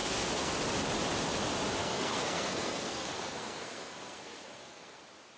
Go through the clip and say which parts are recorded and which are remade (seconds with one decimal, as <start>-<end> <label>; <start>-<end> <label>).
0.0-0.6 remade; 0.6-1.8 recorded; 1.8-5.0 remade; 5.0-5.4 recorded